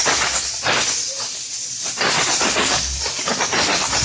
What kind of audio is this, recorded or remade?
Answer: recorded